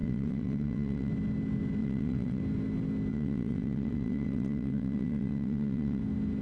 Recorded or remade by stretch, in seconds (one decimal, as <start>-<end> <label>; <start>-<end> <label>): 0.0-1.1 remade; 1.1-1.8 recorded; 1.8-2.4 remade; 2.4-3.1 recorded; 3.1-6.0 remade; 6.0-6.4 recorded